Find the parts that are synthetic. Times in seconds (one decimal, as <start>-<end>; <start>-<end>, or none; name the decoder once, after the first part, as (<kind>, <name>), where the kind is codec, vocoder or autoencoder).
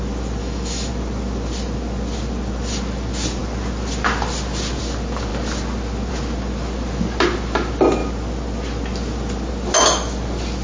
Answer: 0.4-0.9 (autoencoder, DAC-VAE)